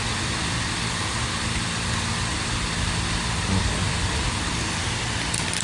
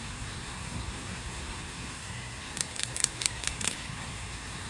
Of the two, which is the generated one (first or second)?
second